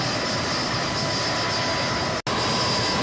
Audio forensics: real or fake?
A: real